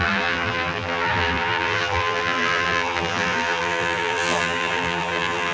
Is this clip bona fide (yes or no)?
no